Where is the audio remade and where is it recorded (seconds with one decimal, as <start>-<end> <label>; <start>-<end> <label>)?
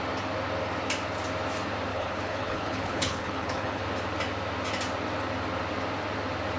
0.0-1.9 recorded; 1.9-3.8 remade; 3.8-6.6 recorded